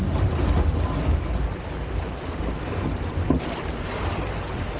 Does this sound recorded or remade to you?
recorded